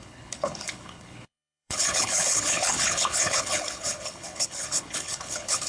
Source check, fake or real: fake